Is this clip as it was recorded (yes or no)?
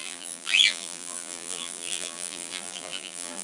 no